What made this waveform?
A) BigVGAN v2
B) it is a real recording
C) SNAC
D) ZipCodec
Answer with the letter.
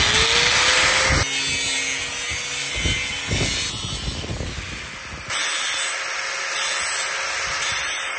B